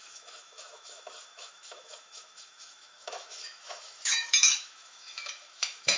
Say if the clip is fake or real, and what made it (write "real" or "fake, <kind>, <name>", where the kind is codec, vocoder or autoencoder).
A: fake, autoencoder, DAC-VAE